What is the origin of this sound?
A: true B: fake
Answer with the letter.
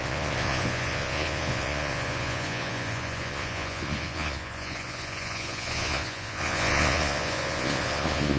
B